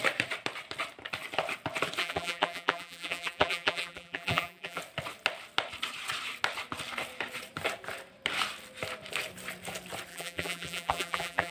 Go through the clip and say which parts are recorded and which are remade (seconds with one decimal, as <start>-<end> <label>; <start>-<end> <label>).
0.0-2.0 recorded; 2.0-4.8 remade; 4.8-10.1 recorded; 10.1-11.5 remade

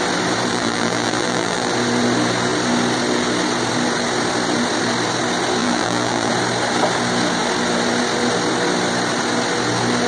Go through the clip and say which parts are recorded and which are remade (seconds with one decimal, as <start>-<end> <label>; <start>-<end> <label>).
0.0-0.5 recorded; 0.5-1.7 remade; 1.7-5.6 recorded; 5.6-6.3 remade; 6.3-10.1 recorded

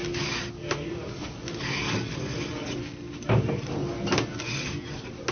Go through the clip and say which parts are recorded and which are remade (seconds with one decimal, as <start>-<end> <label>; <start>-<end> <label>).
0.0-3.2 recorded; 3.2-3.8 remade; 3.8-5.3 recorded

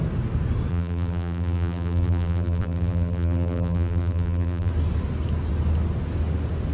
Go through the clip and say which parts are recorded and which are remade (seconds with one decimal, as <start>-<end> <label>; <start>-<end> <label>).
0.0-0.7 recorded; 0.7-4.7 remade; 4.7-6.7 recorded

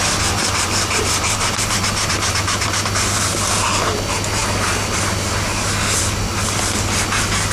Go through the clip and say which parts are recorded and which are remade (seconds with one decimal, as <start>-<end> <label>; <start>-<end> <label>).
0.0-0.4 recorded; 0.4-1.8 remade; 1.8-7.5 recorded

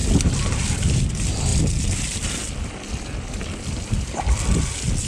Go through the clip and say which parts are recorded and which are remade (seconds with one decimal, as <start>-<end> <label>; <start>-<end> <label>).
0.0-1.5 recorded; 1.5-4.6 remade; 4.6-5.1 recorded